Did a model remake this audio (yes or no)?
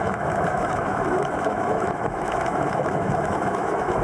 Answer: yes